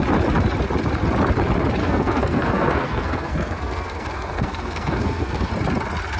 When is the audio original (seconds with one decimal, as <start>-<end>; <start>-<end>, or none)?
0.0-1.8; 5.5-6.2